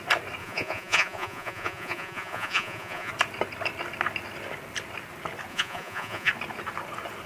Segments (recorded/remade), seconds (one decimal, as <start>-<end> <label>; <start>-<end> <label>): 0.0-0.4 recorded; 0.4-3.1 remade; 3.1-5.5 recorded; 5.5-6.3 remade; 6.3-7.3 recorded